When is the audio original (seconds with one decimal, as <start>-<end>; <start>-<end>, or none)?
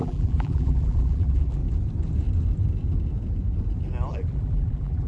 1.6-4.1